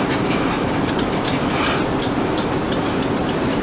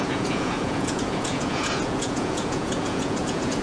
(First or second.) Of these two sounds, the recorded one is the first